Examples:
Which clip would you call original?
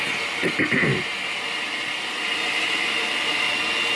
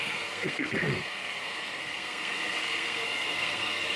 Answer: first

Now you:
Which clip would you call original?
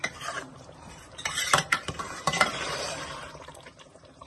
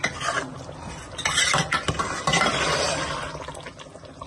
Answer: second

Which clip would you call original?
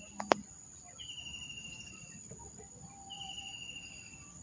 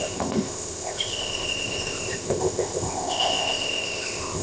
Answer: first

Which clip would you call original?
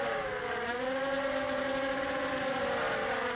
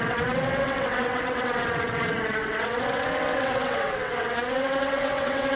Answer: first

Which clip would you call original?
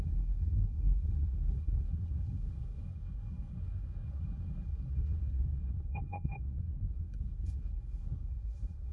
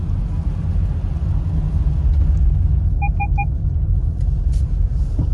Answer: second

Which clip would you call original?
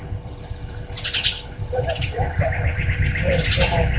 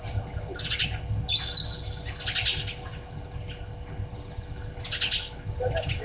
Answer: second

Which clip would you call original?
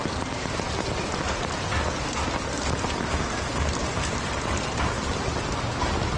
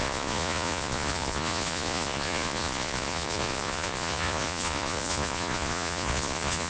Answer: first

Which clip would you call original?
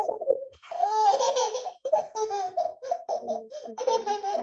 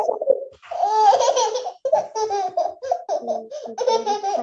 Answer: second